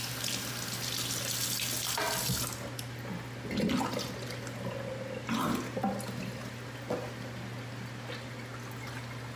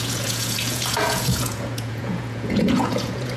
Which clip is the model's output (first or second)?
second